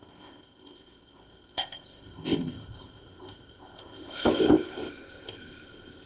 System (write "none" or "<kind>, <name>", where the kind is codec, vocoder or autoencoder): codec, ZipCodec